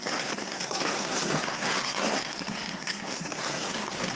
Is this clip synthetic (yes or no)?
yes